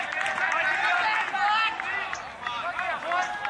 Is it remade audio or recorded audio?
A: recorded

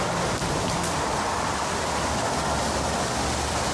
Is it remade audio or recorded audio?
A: recorded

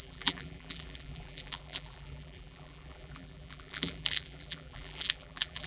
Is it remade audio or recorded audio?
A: remade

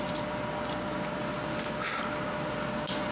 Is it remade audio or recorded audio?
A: recorded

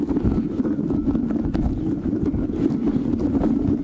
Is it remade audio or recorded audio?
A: recorded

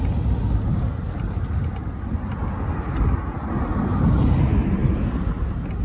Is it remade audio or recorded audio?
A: recorded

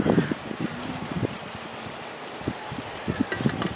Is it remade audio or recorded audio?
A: recorded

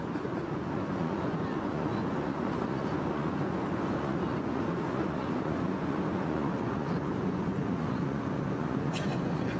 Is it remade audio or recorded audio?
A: remade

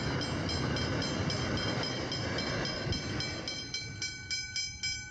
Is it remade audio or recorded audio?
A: recorded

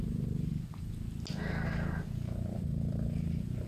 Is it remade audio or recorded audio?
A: recorded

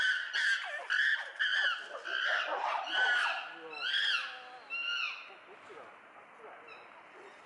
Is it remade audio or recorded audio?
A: recorded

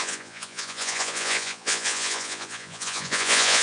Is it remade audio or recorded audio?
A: remade